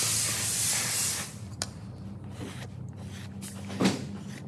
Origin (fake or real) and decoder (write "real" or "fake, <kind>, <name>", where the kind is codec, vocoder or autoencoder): real